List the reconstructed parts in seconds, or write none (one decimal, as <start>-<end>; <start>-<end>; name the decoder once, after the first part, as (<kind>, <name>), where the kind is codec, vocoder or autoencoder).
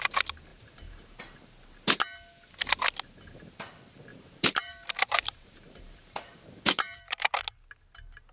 0.5-1.2 (vocoder, BigVGAN v2); 4.1-7.4